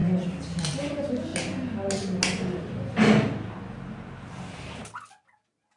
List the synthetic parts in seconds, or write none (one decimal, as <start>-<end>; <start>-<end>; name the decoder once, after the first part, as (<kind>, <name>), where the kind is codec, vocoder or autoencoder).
none